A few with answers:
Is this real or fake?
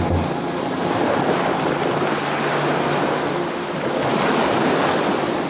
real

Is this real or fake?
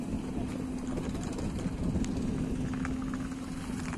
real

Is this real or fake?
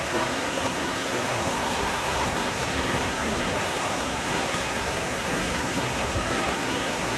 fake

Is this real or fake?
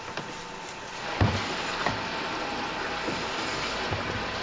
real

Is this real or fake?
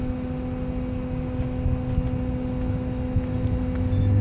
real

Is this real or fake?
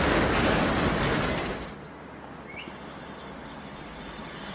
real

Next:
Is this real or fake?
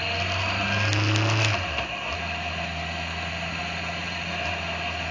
real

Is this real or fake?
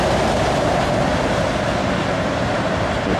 real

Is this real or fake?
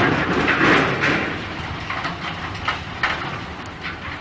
fake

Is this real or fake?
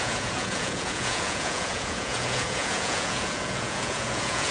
fake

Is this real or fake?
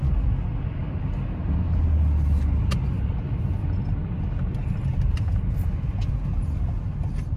real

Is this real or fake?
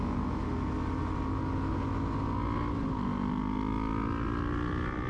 real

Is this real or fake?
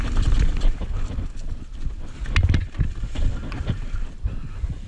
real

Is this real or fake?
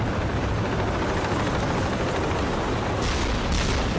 real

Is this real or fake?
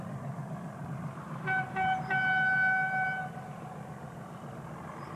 real